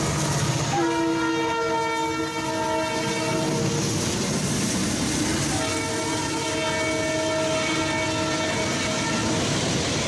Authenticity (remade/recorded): recorded